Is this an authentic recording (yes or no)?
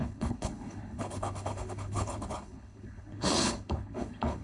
no